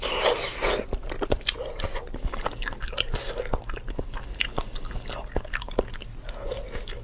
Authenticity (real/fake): real